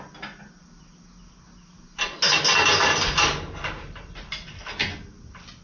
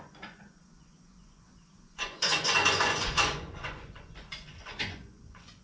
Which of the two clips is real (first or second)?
first